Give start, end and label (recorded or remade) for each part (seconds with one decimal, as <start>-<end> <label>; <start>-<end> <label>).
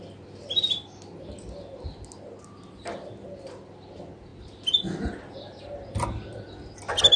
0.0-7.2 recorded